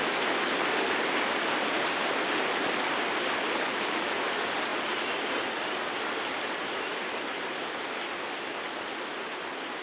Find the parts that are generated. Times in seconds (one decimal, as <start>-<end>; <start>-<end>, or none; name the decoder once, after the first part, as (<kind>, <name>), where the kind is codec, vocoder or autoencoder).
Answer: none